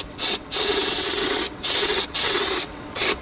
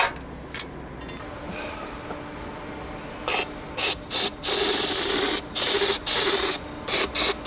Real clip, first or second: second